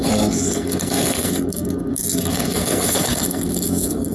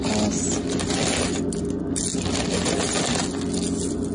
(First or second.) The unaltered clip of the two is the second